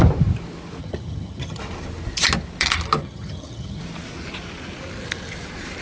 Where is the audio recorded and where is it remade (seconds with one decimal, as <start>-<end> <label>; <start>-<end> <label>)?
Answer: 0.0-0.8 recorded; 0.8-1.6 remade; 1.6-3.0 recorded; 3.0-3.8 remade; 3.8-5.8 recorded